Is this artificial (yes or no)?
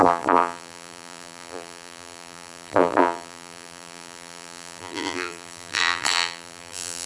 yes